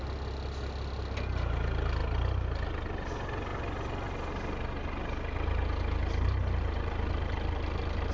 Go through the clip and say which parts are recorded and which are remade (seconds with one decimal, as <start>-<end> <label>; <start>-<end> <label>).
0.0-8.1 recorded